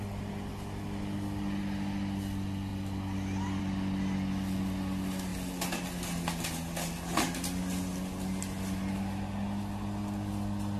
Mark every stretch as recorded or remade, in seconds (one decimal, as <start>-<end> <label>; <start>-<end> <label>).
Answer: 0.0-10.8 recorded